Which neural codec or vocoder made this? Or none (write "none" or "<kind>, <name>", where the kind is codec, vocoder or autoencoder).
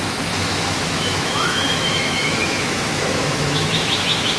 autoencoder, DAC-VAE